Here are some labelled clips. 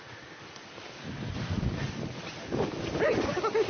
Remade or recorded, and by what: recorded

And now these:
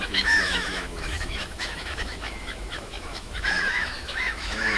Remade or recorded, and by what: remade, autoencoder, DAC-VAE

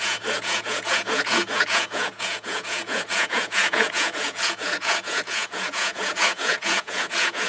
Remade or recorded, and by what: remade, vocoder, Vocos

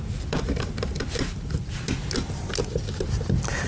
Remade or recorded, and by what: recorded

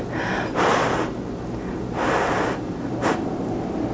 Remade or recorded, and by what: remade, vocoder, BigVGAN v2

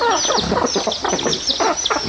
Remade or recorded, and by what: recorded